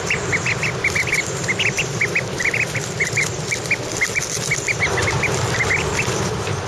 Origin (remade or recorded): remade